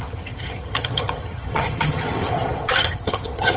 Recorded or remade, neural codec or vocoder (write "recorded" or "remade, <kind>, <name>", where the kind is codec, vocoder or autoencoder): remade, vocoder, HiFi-GAN